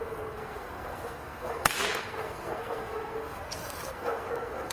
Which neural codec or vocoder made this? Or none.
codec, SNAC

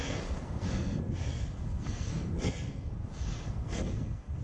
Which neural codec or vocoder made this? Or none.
codec, SNAC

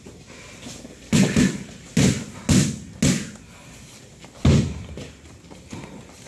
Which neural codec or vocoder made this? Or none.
none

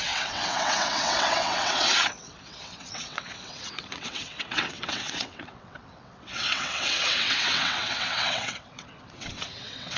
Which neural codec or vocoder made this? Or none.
vocoder, WaveNeXt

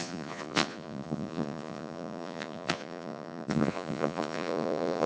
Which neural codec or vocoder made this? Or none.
vocoder, Vocos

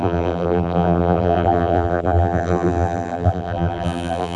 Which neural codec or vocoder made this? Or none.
vocoder, BigVGAN v2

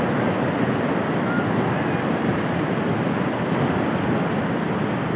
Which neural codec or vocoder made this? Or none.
none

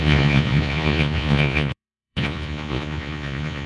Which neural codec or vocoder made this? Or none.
vocoder, Vocos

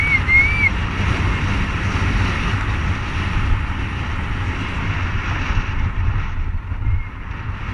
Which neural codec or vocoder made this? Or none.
none